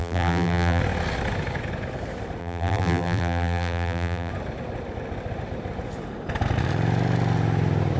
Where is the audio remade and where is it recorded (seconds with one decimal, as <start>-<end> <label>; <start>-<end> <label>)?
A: 0.0-0.8 remade; 0.8-2.4 recorded; 2.4-4.3 remade; 4.3-8.0 recorded